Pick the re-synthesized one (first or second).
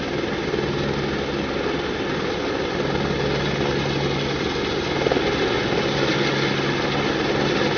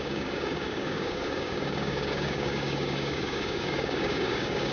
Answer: second